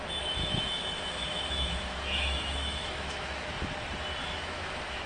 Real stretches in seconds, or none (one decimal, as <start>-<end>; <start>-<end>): 0.0-0.4; 3.5-4.2